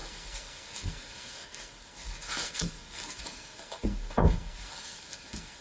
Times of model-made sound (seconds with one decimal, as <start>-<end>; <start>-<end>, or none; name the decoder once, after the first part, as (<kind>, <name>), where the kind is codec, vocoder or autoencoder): 0.0-5.6 (codec, SNAC)